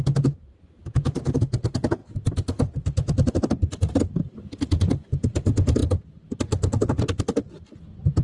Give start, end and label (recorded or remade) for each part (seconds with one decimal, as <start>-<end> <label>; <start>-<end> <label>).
0.0-8.2 recorded